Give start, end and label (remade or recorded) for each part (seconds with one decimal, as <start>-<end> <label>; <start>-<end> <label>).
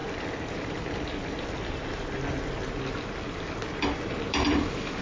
0.0-5.0 recorded